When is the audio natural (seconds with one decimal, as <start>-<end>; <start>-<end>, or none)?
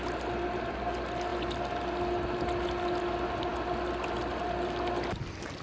0.0-5.6